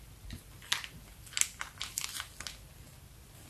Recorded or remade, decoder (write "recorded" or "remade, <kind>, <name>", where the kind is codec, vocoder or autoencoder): recorded